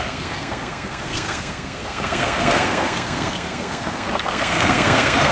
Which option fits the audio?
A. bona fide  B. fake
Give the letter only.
B